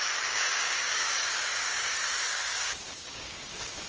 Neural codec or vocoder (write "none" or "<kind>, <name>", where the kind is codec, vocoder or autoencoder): codec, DAC